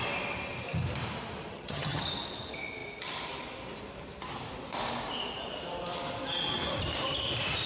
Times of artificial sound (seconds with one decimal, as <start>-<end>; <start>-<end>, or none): 1.5-2.0